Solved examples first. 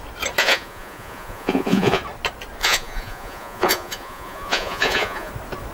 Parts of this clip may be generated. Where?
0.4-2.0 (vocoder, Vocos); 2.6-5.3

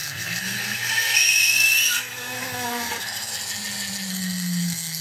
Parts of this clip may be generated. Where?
0.0-3.3 (codec, SNAC); 4.1-5.0